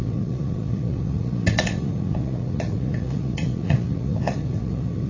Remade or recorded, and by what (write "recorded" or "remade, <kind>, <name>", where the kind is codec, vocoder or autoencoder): remade, vocoder, Vocos